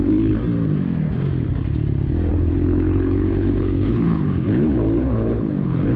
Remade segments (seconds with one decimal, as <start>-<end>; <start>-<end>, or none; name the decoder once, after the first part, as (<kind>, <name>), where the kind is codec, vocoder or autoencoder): 0.0-0.4 (codec, HILCodec); 2.3-6.0